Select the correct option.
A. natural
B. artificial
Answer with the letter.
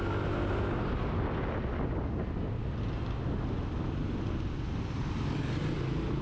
A